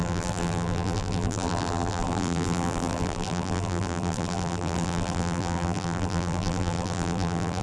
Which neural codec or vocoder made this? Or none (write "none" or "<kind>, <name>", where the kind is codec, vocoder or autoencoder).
vocoder, BigVGAN v2